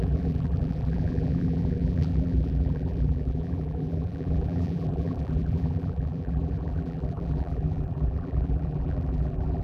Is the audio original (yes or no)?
no